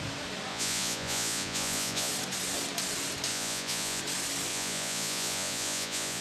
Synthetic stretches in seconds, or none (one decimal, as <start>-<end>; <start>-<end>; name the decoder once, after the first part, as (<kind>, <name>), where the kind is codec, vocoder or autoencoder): 0.5-2.1 (vocoder, Vocos); 3.3-4.0; 4.5-6.2